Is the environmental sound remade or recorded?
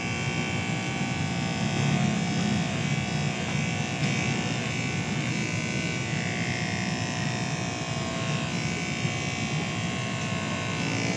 recorded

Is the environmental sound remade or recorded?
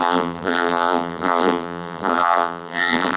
remade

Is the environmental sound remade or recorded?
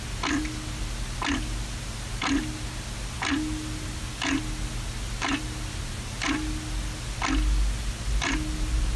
recorded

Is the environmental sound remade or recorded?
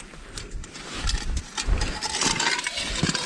recorded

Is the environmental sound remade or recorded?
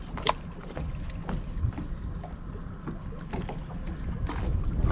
recorded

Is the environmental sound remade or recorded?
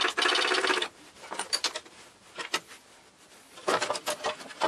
remade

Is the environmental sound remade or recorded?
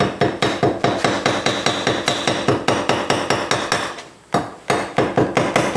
recorded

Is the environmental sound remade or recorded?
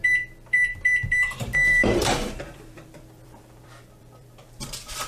remade